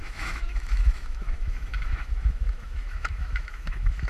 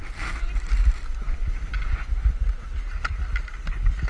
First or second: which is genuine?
second